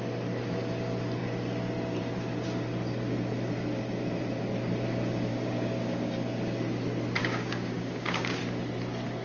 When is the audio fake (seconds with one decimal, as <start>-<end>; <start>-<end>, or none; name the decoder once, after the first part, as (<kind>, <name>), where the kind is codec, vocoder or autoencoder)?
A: 5.3-6.2 (codec, DAC); 7.2-8.4